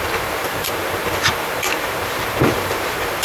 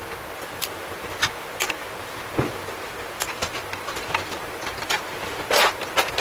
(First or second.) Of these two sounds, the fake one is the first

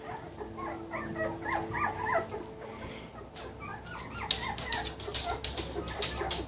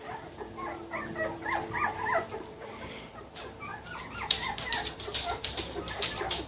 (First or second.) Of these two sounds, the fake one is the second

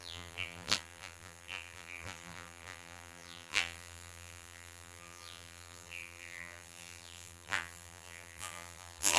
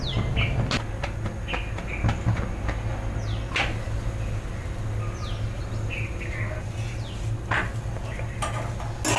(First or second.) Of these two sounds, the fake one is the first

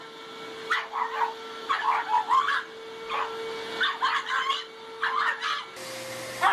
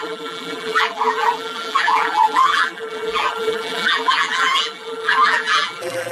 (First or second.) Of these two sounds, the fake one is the second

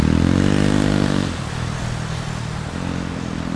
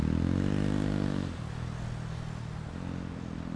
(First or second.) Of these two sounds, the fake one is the first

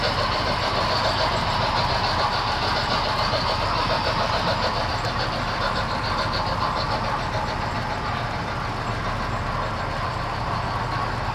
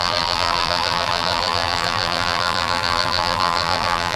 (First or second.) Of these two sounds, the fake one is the second